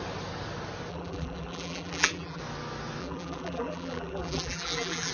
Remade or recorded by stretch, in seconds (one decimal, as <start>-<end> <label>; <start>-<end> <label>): 0.0-0.9 recorded; 0.9-2.4 remade; 2.4-3.0 recorded; 3.0-5.1 remade